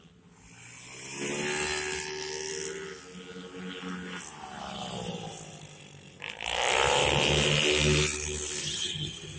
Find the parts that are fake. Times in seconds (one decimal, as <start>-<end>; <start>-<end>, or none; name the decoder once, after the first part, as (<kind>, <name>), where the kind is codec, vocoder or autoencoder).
8.6-9.4 (vocoder, HiFi-GAN)